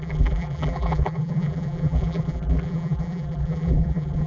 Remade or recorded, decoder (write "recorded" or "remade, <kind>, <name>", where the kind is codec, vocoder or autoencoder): remade, vocoder, BigVGAN v2